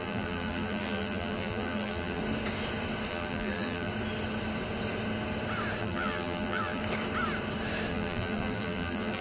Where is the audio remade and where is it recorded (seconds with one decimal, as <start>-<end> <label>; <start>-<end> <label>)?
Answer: 0.0-2.2 remade; 2.2-3.1 recorded; 3.1-3.9 remade; 3.9-5.8 recorded; 5.8-6.8 remade; 6.8-7.9 recorded; 7.9-9.2 remade